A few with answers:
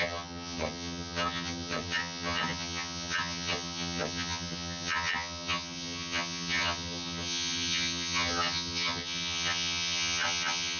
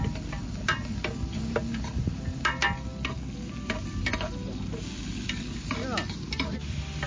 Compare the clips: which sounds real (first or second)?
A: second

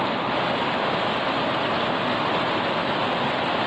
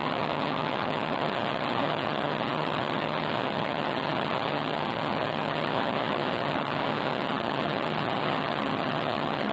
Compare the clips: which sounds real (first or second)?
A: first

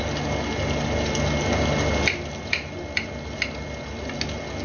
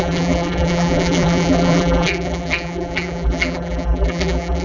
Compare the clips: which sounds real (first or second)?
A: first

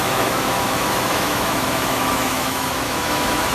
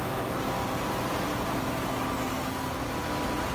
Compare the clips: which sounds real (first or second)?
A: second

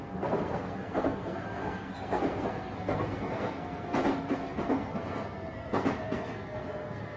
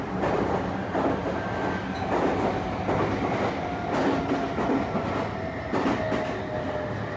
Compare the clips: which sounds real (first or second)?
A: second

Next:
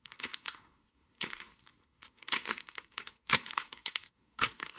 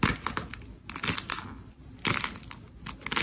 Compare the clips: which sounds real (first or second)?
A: second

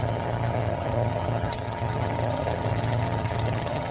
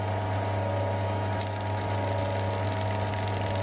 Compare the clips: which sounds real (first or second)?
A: second